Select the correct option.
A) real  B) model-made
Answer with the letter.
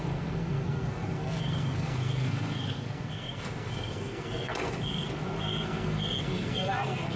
B